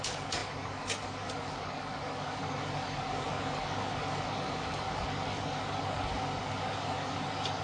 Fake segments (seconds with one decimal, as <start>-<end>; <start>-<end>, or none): 0.0-7.6